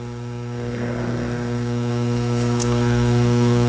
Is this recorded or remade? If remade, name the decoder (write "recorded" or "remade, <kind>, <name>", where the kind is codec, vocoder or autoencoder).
remade, codec, SNAC